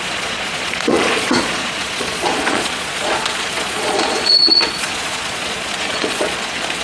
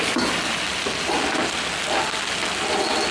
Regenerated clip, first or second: first